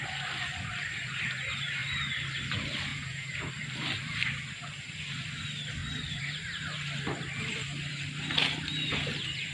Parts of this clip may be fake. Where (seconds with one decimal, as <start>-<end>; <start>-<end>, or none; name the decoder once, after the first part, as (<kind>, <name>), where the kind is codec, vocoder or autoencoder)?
2.9-3.5 (vocoder, Vocos)